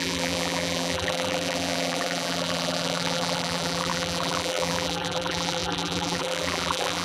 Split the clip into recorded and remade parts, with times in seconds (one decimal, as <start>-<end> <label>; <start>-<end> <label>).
0.0-7.0 remade